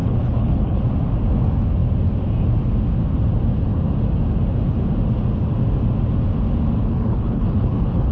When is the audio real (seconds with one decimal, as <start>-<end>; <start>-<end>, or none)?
0.8-6.8